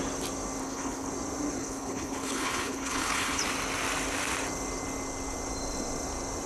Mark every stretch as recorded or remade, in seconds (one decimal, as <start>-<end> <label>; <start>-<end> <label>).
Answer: 0.0-0.6 recorded; 0.6-1.1 remade; 1.1-1.6 recorded; 1.6-3.4 remade; 3.4-6.5 recorded